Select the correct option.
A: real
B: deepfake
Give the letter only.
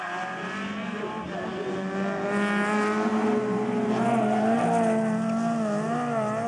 A